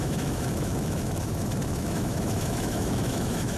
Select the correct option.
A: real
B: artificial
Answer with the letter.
B